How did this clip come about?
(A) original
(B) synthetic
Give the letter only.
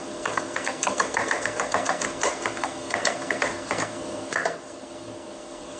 B